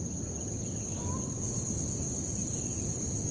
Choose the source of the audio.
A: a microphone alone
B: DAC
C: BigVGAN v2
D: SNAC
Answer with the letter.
A